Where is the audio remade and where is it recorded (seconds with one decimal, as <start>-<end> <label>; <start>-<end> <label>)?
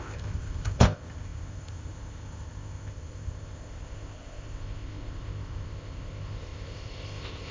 0.0-7.5 remade